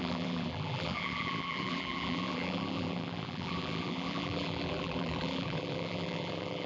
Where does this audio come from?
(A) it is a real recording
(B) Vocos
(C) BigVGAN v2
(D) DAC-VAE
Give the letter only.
C